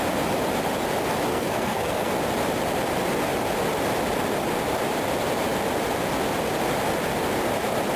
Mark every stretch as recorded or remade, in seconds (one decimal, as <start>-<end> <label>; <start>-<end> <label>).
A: 0.0-1.3 recorded; 1.3-2.1 remade; 2.1-8.0 recorded